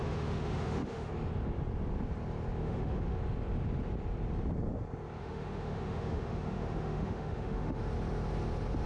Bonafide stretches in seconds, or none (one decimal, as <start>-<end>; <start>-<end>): 1.1-2.6; 3.2-5.2; 7.8-8.9